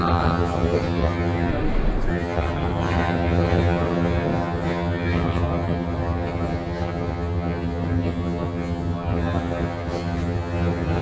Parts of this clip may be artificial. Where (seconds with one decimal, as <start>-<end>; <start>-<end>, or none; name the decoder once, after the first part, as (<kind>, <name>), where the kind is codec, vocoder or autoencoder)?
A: 0.0-1.5 (vocoder, HiFi-GAN); 2.1-11.0